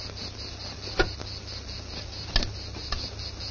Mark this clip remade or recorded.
recorded